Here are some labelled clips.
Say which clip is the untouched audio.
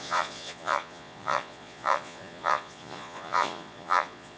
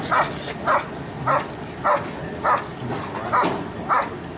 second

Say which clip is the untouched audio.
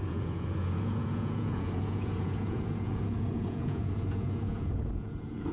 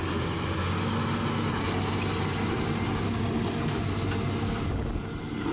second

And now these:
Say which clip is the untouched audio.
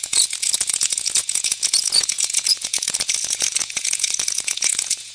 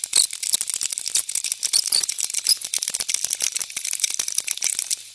second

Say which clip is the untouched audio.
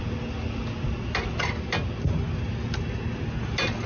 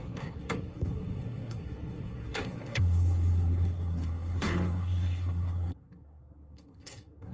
first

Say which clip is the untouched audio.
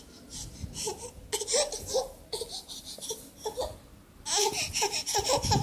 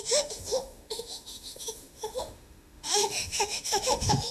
first